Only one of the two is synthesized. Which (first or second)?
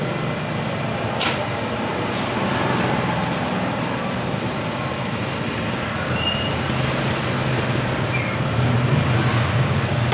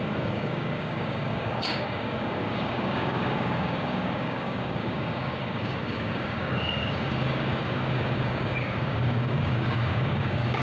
second